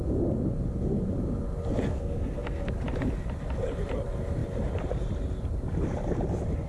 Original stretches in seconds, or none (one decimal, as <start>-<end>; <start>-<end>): 0.0-1.9; 2.7-6.7